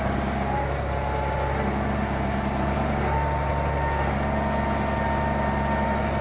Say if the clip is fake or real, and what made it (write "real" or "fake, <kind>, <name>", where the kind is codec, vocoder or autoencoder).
real